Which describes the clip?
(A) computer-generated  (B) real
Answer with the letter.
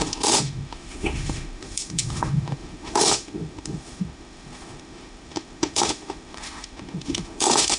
A